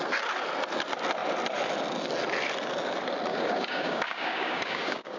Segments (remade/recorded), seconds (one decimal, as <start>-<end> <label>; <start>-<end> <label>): 0.0-3.3 recorded; 3.3-5.2 remade